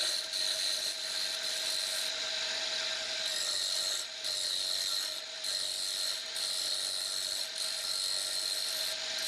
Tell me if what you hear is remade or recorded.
recorded